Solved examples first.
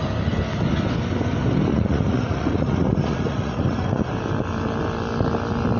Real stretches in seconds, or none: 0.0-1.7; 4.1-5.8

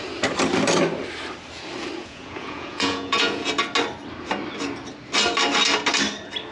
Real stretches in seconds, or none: 0.0-2.0; 3.5-6.5

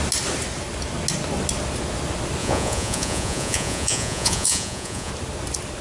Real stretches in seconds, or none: 0.0-2.4; 5.1-5.8

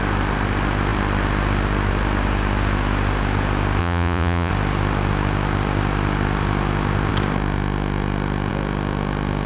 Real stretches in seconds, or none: 0.0-3.8; 4.5-9.5